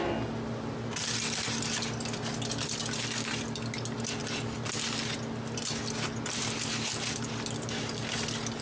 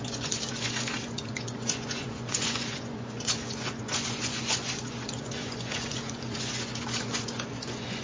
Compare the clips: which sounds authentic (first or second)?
first